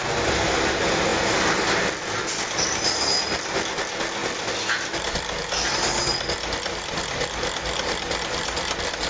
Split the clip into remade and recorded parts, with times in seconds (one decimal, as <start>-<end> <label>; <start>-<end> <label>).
0.0-9.1 recorded